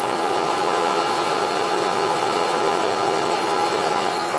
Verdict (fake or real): fake